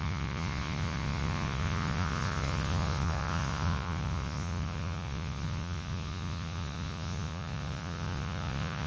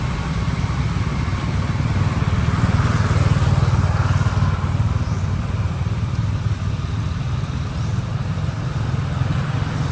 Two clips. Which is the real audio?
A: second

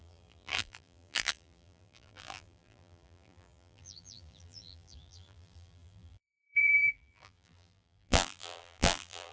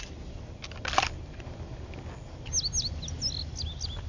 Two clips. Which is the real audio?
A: second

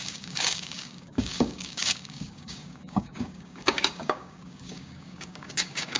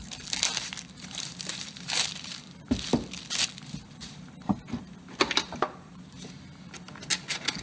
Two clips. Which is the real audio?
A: second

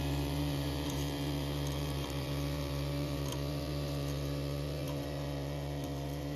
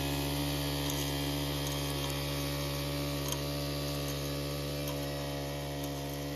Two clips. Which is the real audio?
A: second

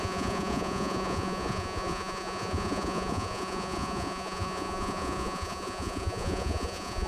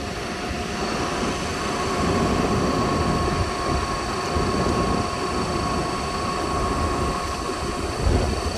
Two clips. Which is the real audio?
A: second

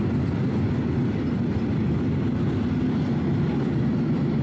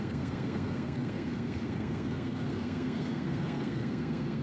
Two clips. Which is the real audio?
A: first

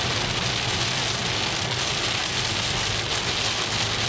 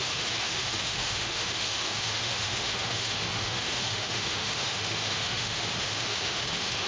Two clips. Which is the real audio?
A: first